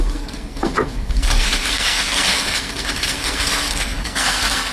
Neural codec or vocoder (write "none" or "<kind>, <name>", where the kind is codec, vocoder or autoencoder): codec, SNAC